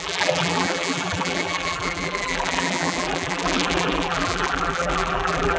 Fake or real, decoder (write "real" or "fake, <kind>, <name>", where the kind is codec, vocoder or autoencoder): fake, vocoder, BigVGAN v2